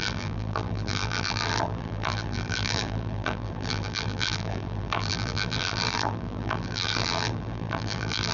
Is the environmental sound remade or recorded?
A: remade